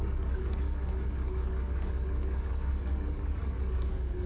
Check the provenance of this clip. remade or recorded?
remade